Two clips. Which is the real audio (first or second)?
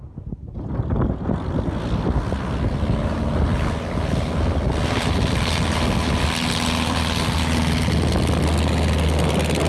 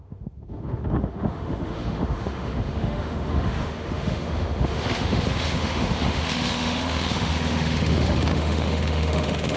first